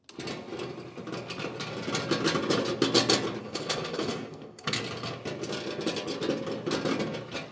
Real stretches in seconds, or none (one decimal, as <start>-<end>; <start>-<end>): 0.0-3.4; 4.8-7.5